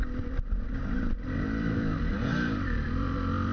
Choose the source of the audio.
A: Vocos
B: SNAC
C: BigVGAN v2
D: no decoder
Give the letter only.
C